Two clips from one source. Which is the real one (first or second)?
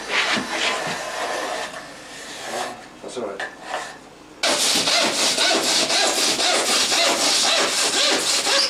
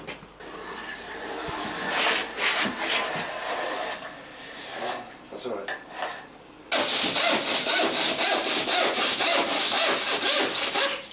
first